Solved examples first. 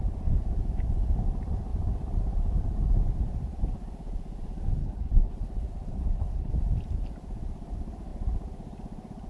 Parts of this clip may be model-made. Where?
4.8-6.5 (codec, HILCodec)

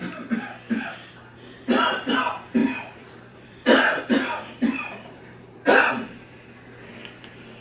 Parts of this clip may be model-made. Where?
2.6-5.9 (vocoder, BigVGAN v2)

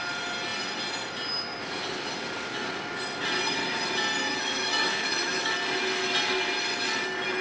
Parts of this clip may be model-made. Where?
4.2-5.5 (autoencoder, DAC-VAE)

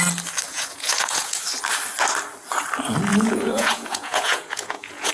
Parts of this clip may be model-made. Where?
0.5-1.4 (vocoder, Vocos); 3.1-5.1

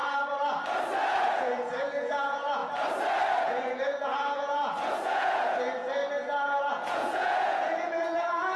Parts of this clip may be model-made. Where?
1.1-2.6 (vocoder, Vocos); 3.4-6.0; 6.7-8.6

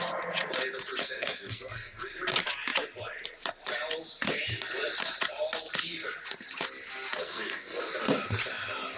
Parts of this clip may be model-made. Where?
1.0-2.1 (codec, SNAC); 7.2-7.8